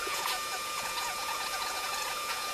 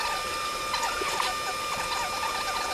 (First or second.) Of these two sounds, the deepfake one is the first